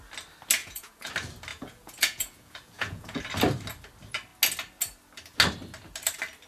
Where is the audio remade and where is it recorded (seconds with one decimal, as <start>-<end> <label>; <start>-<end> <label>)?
0.0-0.6 recorded; 0.6-1.1 remade; 1.1-1.5 recorded; 1.5-3.2 remade; 3.2-6.5 recorded